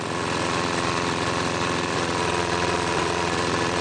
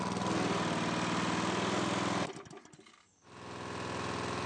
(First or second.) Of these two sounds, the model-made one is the first